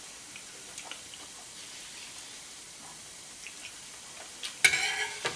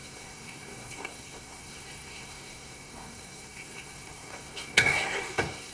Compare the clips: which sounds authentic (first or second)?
first